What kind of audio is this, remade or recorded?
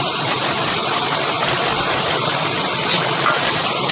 recorded